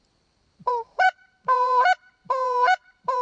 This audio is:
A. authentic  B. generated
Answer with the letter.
B